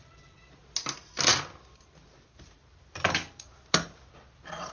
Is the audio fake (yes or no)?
no